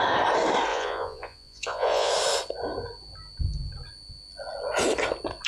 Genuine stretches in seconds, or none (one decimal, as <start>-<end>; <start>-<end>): 0.0-0.7; 2.1-5.5